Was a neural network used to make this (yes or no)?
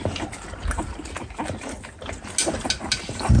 no